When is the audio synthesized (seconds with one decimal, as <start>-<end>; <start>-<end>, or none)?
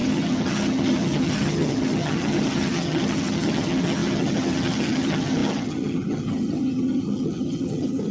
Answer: 0.0-8.1